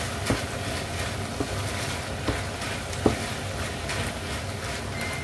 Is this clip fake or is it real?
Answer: real